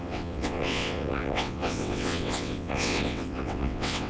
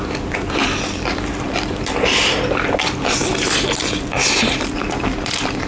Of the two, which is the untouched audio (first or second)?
second